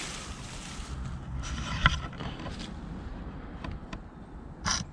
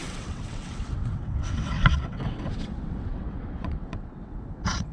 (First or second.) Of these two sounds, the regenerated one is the second